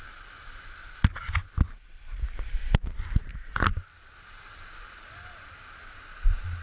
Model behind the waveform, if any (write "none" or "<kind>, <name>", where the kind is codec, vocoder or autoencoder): none